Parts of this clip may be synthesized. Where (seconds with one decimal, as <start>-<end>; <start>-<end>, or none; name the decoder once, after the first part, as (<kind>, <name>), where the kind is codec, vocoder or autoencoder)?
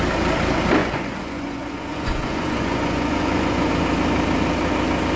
0.8-3.7 (vocoder, Vocos)